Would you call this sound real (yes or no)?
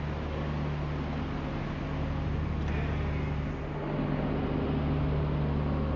yes